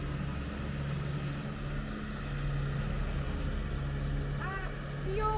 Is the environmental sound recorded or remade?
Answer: recorded